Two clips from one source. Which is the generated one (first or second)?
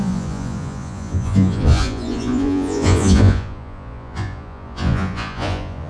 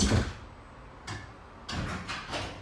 first